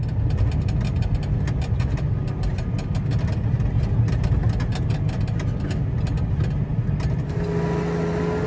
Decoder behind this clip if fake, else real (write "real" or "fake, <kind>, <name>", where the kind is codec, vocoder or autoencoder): real